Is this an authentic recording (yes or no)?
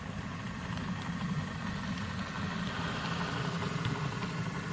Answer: yes